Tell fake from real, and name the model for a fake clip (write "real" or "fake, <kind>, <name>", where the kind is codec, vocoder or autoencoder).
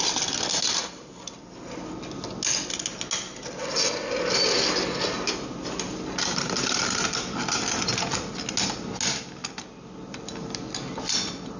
real